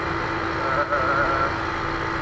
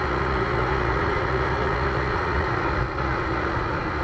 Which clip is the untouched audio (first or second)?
first